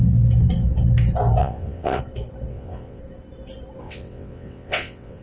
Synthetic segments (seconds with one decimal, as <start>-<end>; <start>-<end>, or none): 1.4-2.0; 2.5-3.0; 3.8-5.2